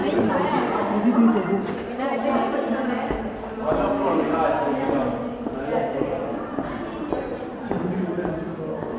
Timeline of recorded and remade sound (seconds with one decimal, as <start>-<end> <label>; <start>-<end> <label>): 0.0-1.2 remade; 1.2-7.3 recorded; 7.3-8.3 remade; 8.3-9.0 recorded